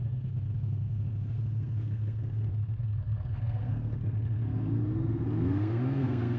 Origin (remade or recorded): remade